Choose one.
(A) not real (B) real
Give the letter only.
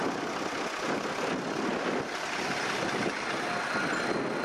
B